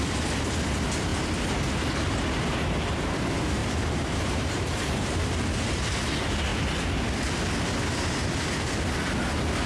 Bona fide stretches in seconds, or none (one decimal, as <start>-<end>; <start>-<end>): 0.0-3.6; 5.2-9.7